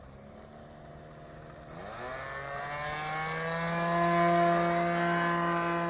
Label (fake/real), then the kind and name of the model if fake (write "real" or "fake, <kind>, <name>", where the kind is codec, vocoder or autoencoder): real